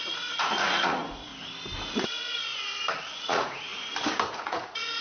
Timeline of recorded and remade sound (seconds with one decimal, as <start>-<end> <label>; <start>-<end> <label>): 0.0-1.3 remade; 1.3-2.0 recorded; 2.0-2.5 remade; 2.5-3.2 recorded; 3.2-3.7 remade; 3.7-4.3 recorded; 4.3-5.0 remade